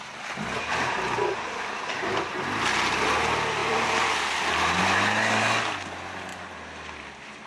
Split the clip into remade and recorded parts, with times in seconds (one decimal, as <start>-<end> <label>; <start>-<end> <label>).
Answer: 0.0-3.6 recorded; 3.6-4.8 remade; 4.8-6.3 recorded; 6.3-7.0 remade; 7.0-7.5 recorded